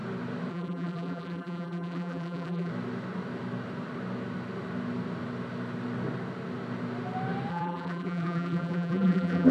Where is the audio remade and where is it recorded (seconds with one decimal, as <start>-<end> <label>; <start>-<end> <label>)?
0.0-0.5 recorded; 0.5-2.7 remade; 2.7-7.5 recorded; 7.5-9.5 remade